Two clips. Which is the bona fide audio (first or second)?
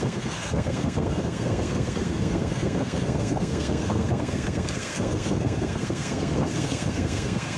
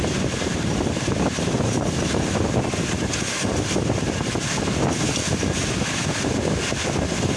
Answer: second